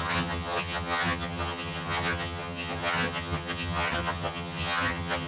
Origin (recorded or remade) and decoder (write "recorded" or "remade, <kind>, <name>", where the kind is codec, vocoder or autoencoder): remade, vocoder, HiFi-GAN